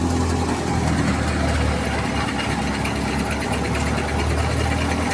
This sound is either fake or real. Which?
real